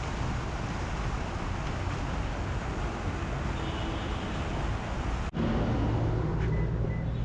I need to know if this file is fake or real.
real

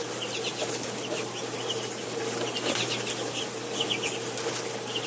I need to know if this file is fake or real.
real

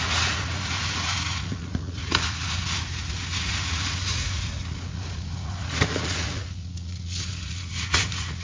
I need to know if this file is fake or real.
fake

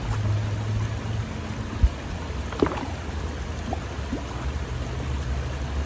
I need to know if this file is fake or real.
real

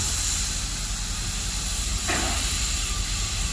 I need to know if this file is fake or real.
real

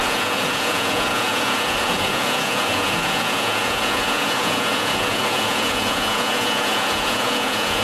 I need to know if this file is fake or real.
fake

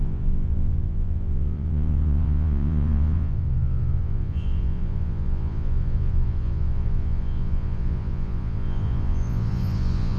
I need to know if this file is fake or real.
fake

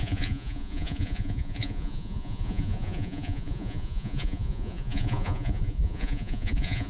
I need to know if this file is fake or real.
fake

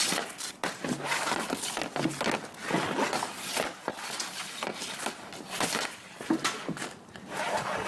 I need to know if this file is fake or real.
real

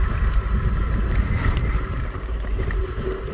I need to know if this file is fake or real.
real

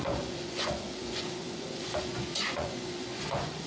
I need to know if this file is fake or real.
fake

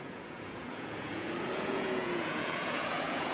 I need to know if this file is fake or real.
fake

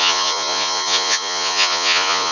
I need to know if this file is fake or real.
fake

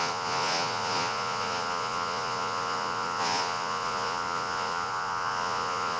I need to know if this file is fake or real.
fake